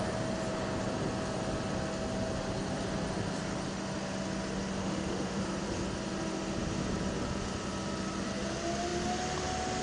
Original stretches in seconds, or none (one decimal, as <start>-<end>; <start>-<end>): 0.0-4.8; 5.4-9.8